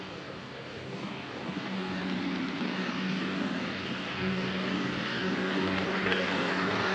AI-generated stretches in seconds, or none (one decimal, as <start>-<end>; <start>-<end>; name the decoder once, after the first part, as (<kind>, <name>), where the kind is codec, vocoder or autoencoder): 0.0-2.0 (codec, DAC); 2.6-6.9